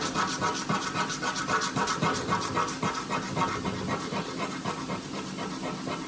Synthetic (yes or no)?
no